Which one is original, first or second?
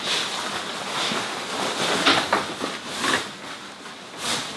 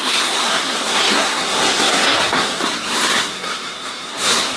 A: first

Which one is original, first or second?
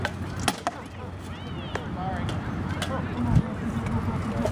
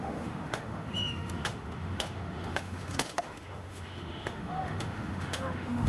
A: first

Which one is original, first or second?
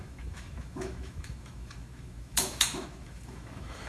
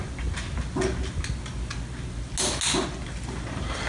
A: second